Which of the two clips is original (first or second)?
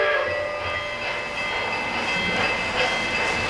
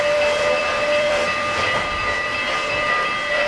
first